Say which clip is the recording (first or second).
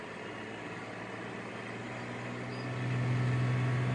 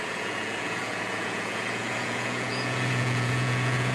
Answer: first